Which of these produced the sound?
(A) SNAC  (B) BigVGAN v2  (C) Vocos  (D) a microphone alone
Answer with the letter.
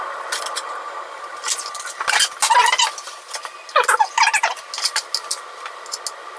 D